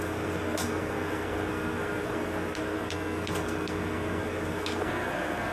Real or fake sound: fake